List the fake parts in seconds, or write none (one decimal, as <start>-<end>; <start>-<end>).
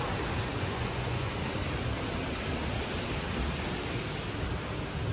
0.5-1.3